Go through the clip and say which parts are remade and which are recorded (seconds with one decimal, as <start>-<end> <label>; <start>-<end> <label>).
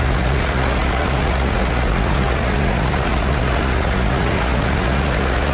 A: 0.0-5.5 remade